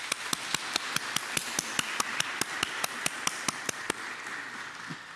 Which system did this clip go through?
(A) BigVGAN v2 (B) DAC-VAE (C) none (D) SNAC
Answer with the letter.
C